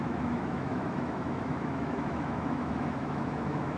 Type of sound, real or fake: fake